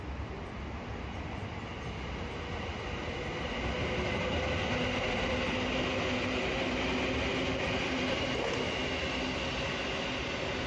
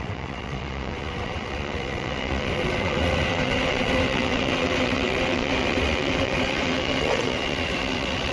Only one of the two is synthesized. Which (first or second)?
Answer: second